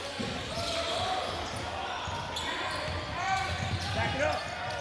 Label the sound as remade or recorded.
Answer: recorded